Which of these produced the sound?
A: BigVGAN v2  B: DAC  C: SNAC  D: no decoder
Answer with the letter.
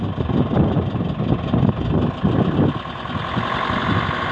D